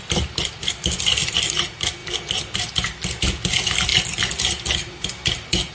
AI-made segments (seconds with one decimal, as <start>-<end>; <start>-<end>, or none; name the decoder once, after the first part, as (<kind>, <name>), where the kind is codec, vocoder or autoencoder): none